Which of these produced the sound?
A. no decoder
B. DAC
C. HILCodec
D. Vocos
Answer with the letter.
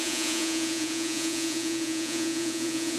D